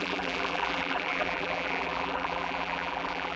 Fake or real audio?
fake